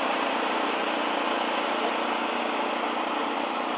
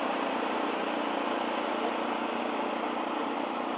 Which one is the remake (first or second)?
second